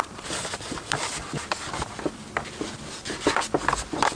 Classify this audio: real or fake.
real